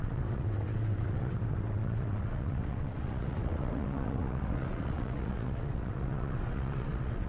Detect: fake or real fake